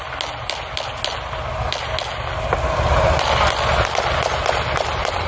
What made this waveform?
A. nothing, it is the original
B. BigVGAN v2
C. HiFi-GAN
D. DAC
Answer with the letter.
A